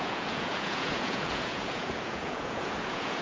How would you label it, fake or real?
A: fake